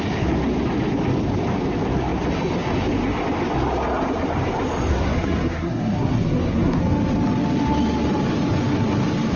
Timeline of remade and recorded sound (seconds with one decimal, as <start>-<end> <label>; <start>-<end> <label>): 0.0-4.9 recorded; 4.9-6.8 remade; 6.8-9.4 recorded